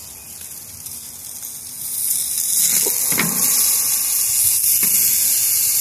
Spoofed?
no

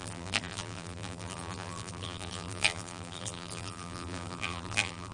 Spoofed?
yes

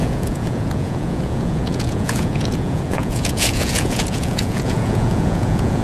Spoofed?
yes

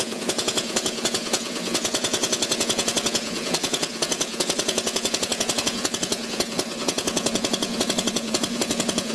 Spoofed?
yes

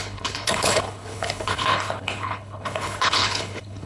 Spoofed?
yes